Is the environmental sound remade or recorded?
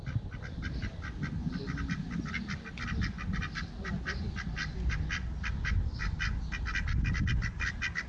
recorded